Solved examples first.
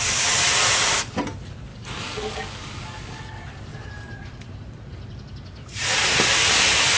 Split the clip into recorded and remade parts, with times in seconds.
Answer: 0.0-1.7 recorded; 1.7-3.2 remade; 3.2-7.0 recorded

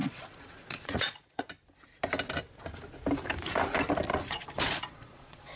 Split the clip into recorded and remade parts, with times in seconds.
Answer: 0.0-1.5 remade; 1.5-4.1 recorded; 4.1-5.6 remade

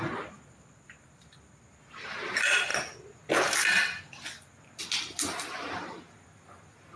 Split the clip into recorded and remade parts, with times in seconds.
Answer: 0.0-7.0 recorded

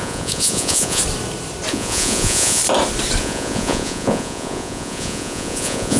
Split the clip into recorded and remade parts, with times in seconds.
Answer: 0.0-1.0 remade; 1.0-1.7 recorded; 1.7-2.6 remade; 2.6-3.2 recorded; 3.2-6.0 remade

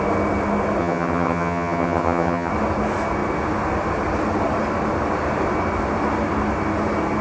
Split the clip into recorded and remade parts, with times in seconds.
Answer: 0.0-0.8 recorded; 0.8-2.5 remade; 2.5-7.2 recorded